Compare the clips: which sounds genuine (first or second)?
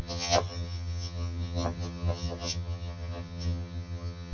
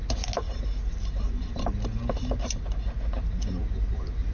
second